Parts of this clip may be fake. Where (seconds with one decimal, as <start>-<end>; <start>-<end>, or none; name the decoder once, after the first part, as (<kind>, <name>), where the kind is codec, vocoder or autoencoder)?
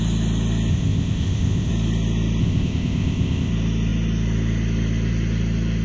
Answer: 0.7-1.7 (codec, ZipCodec); 2.4-3.5